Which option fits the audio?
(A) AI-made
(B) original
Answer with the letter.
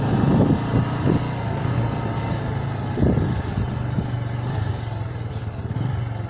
B